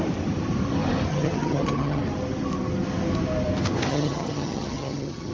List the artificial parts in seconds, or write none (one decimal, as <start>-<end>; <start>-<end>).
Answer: 1.1-2.0; 3.9-5.3